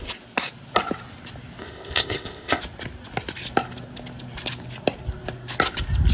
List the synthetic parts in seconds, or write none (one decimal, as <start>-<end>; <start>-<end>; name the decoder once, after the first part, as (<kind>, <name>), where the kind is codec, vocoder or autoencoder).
1.6-2.6 (codec, ZipCodec)